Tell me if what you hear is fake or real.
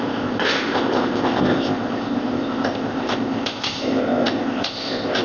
fake